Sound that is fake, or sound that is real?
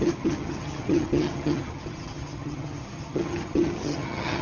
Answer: fake